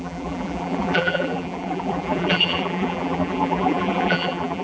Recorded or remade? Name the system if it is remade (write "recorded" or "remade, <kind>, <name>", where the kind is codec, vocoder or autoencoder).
remade, vocoder, BigVGAN v2